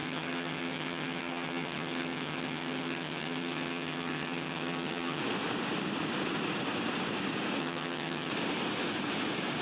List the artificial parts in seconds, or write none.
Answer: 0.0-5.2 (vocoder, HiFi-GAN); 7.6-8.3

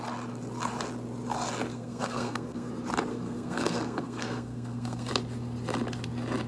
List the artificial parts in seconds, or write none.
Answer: 1.7-2.7 (codec, SNAC); 3.1-5.1

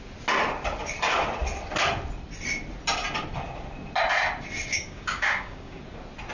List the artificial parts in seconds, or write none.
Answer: 4.7-5.8 (codec, DAC)

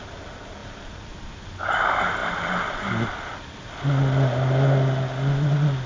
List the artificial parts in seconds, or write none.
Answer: none